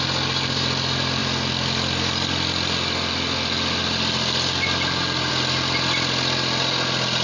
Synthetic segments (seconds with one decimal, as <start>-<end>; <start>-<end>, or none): none